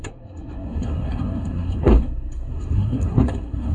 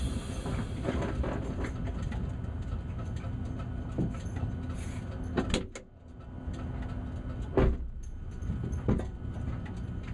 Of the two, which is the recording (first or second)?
second